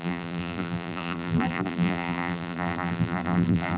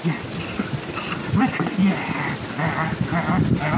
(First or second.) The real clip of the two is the second